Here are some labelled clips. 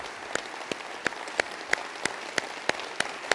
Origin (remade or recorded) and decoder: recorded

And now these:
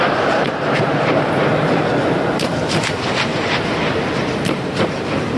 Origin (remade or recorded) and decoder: remade, vocoder, BigVGAN v2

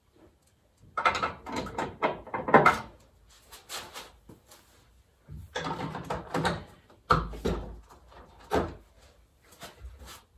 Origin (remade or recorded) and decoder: recorded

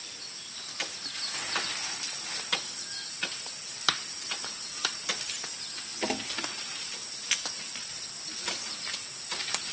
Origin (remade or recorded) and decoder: recorded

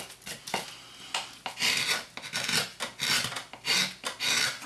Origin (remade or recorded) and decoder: recorded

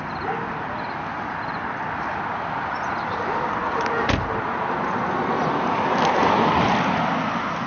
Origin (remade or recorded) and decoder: remade, vocoder, BigVGAN v2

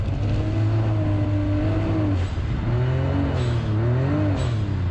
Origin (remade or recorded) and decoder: recorded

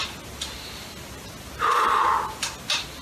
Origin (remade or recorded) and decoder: recorded